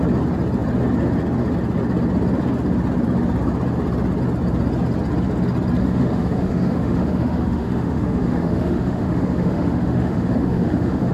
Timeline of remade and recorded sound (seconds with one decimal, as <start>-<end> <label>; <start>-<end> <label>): 0.0-5.8 recorded; 5.8-11.1 remade